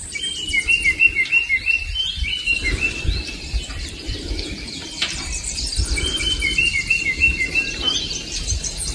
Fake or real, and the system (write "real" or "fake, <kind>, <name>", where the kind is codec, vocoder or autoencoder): fake, vocoder, BigVGAN v2